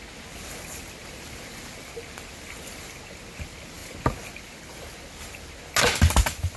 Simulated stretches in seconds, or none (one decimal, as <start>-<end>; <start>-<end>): none